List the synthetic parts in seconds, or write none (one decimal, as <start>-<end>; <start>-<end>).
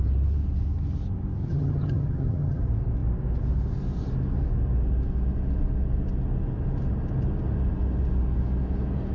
1.4-2.6